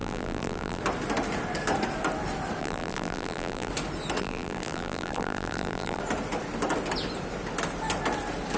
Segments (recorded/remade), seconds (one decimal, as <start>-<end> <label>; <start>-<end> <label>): 0.0-0.8 remade; 0.8-2.6 recorded; 2.6-3.7 remade; 3.7-4.2 recorded; 4.2-6.0 remade; 6.0-8.6 recorded